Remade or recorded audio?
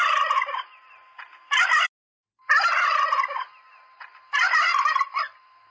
recorded